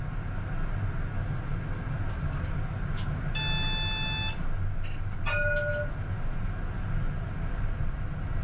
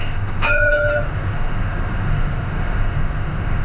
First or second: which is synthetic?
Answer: second